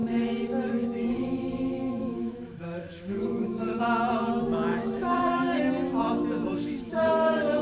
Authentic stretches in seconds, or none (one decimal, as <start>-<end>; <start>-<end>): 3.8-4.7; 5.6-6.5